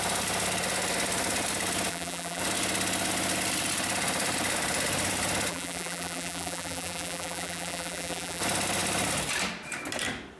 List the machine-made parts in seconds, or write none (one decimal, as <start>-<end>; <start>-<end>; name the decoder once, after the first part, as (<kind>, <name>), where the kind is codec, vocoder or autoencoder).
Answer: 1.9-2.4 (vocoder, BigVGAN v2); 5.5-8.4